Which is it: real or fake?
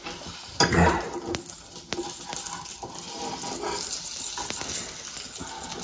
real